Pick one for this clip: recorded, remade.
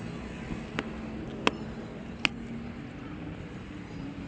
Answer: recorded